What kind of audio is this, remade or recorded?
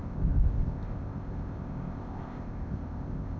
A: remade